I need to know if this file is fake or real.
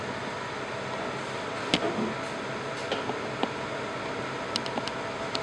real